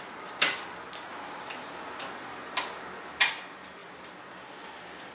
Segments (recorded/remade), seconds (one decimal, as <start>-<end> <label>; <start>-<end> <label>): 0.0-5.1 recorded